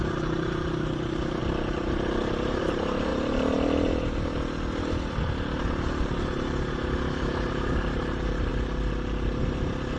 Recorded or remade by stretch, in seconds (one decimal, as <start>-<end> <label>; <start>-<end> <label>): 0.0-1.4 remade; 1.4-2.6 recorded; 2.6-3.1 remade; 3.1-6.7 recorded; 6.7-8.5 remade; 8.5-10.0 recorded